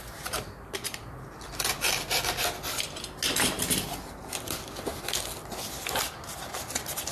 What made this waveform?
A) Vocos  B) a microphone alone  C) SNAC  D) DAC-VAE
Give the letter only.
B